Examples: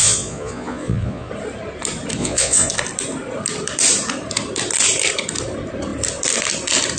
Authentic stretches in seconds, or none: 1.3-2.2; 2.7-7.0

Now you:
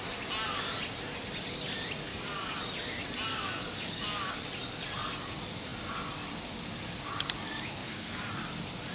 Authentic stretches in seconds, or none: 0.0-2.1; 2.6-3.3; 4.4-7.8; 8.3-8.9